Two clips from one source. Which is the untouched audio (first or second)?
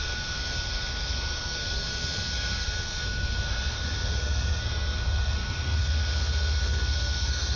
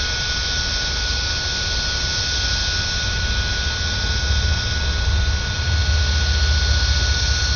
second